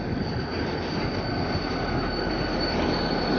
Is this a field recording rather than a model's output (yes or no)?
yes